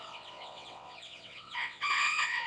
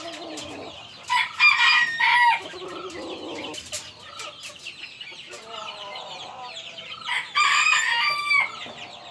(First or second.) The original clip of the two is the second